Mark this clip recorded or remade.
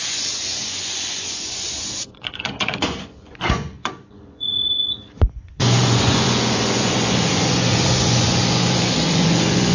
remade